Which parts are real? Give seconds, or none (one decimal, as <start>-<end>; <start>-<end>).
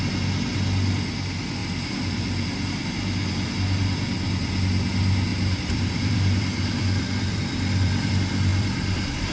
0.0-1.6; 2.9-5.3; 8.1-8.5